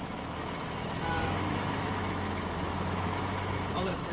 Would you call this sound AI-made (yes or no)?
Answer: yes